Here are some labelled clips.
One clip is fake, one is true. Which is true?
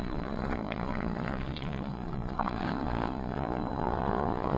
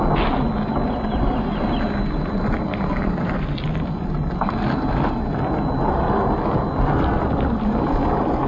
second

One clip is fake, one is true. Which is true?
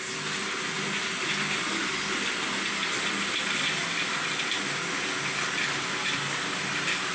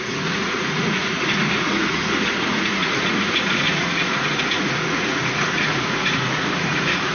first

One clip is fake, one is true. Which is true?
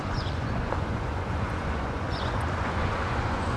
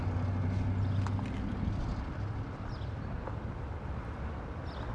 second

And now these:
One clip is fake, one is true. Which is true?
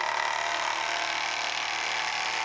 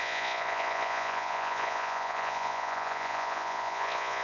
first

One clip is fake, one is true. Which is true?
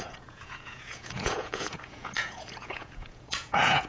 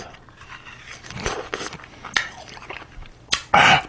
second